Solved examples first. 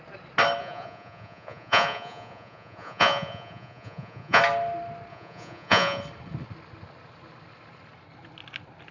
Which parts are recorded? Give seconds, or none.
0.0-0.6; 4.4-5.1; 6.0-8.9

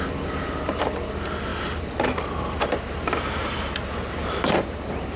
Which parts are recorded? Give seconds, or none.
0.0-5.2